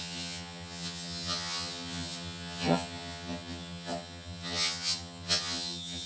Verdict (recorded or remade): remade